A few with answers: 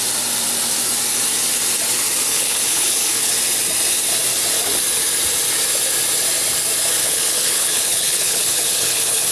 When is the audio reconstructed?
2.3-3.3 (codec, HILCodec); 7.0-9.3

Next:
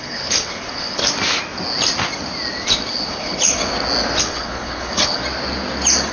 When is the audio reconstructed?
0.0-1.0 (codec, HILCodec); 2.9-3.6; 4.2-5.2

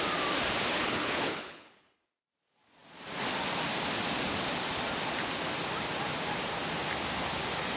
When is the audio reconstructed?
0.7-2.0 (codec, HILCodec)

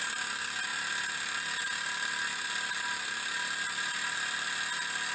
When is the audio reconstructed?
none

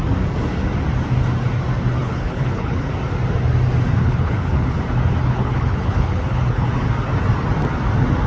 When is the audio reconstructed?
2.0-2.9 (codec, HILCodec); 4.0-4.8; 5.2-6.7

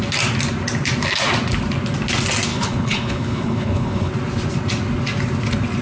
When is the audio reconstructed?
2.5-4.1 (codec, HILCodec)

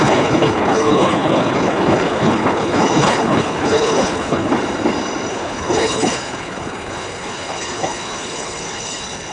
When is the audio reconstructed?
0.0-4.5 (codec, HILCodec); 5.3-9.3

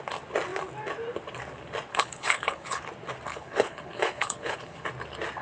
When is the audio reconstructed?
1.9-2.8 (codec, HILCodec); 3.3-4.9